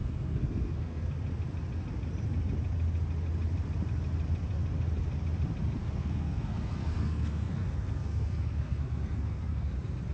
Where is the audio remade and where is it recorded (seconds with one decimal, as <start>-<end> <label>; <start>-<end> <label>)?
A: 0.0-1.1 remade; 1.1-5.8 recorded; 5.8-9.7 remade; 9.7-10.1 recorded